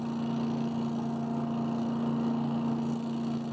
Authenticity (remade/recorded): recorded